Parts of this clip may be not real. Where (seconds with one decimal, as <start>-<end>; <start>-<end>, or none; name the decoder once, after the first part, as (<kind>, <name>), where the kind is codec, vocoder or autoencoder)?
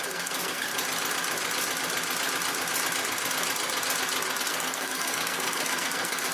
0.0-0.7 (codec, SNAC); 4.4-6.3